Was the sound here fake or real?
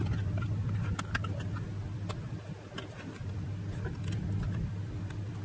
real